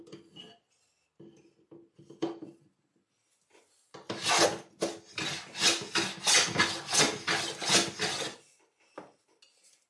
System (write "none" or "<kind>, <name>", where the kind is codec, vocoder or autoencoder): none